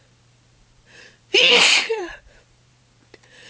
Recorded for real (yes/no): no